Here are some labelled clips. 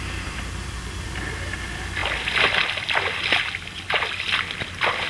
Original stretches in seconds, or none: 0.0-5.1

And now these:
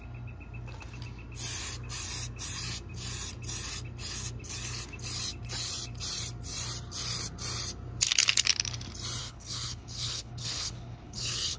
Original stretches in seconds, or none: 0.0-9.2

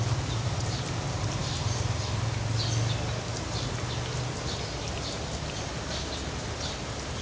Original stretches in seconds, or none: 0.0-7.2

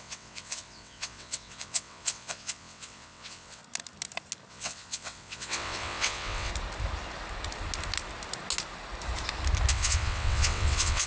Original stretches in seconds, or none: 3.6-4.5; 6.5-9.7

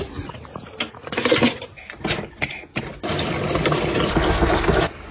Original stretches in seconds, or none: 0.0-5.1

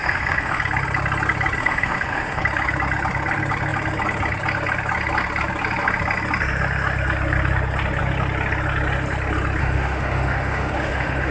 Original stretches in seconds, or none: 0.6-1.6; 2.4-9.6

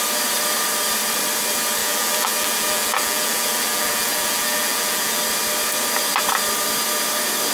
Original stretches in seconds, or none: 0.0-1.8; 5.2-7.5

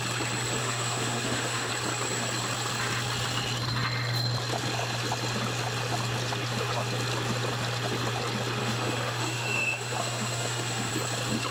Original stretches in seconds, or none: 0.0-0.6; 1.7-8.6; 10.9-11.5